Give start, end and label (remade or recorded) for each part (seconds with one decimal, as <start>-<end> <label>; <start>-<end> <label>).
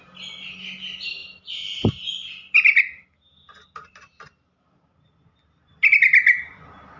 0.0-7.0 recorded